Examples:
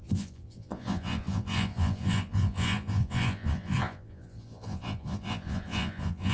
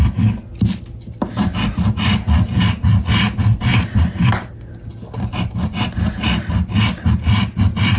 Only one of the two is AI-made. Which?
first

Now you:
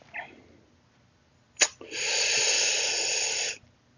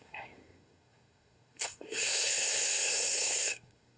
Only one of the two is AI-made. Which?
second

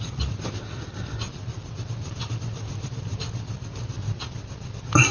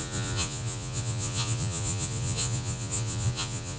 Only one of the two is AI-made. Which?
second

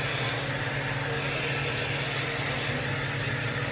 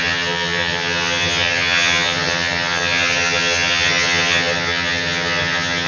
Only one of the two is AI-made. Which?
second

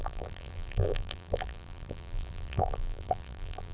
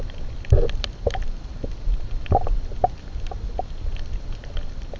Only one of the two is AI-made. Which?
first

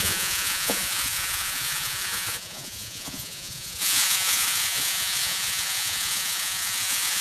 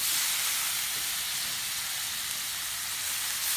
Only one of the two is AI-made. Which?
first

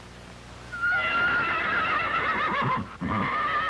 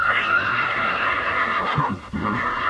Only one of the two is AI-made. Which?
second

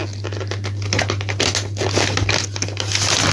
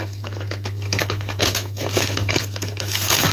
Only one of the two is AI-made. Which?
second